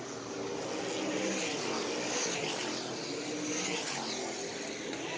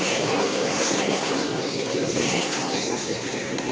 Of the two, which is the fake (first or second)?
second